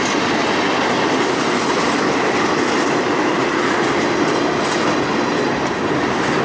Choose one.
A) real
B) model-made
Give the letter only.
A